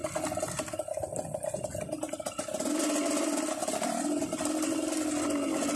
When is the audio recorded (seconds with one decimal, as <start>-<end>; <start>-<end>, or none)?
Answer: 0.0-3.6; 4.2-5.8